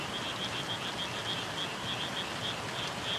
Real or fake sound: real